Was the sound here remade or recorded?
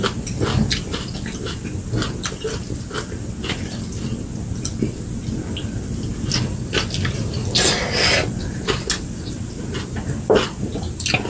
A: recorded